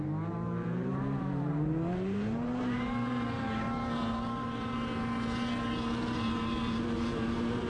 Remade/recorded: remade